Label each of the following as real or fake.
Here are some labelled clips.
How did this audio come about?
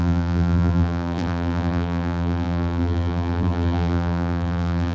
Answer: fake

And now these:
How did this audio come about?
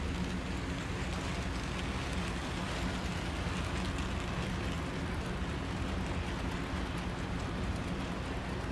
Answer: real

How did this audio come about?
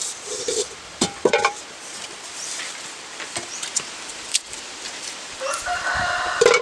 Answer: fake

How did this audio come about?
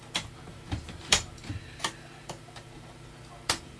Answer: fake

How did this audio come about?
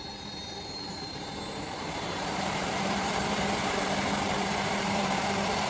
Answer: fake